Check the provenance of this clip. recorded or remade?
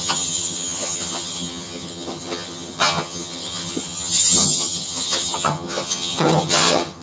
remade